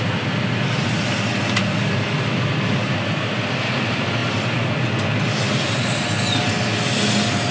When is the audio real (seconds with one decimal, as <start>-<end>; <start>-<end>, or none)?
0.0-7.5

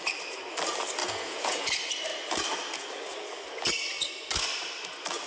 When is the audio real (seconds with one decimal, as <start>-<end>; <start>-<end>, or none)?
0.0-1.0; 1.7-5.3

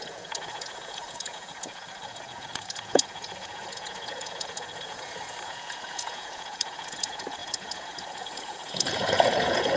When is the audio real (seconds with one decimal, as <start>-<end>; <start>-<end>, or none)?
none